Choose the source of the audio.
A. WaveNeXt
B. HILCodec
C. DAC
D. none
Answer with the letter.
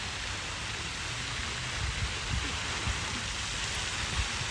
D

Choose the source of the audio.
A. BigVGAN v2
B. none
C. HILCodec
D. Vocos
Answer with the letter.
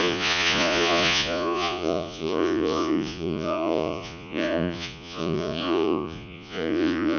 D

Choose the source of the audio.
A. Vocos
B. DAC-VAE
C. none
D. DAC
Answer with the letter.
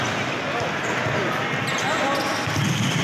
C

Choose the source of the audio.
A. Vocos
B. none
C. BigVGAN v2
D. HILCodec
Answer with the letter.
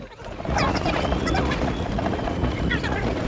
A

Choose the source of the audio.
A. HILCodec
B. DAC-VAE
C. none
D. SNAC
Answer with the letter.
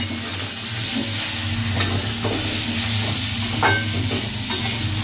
C